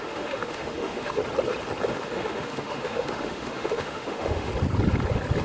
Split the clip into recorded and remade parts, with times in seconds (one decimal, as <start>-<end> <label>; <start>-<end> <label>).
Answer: 0.0-1.2 remade; 1.2-1.9 recorded; 1.9-4.5 remade; 4.5-5.4 recorded